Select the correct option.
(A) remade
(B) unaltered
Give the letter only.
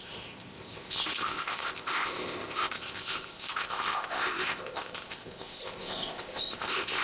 A